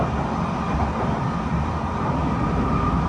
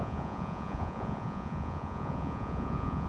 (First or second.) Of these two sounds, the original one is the first